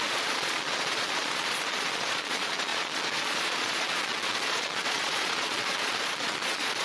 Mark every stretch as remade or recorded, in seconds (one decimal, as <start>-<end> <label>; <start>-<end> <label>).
0.0-6.8 remade